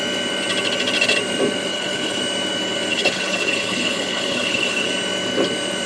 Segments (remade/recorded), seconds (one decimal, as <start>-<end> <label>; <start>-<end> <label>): 0.0-1.7 recorded; 1.7-2.2 remade; 2.2-2.9 recorded; 2.9-4.9 remade; 4.9-5.9 recorded